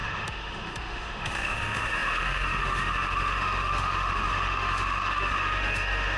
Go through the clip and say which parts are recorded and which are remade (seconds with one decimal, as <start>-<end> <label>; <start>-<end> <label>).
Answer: 0.0-6.2 remade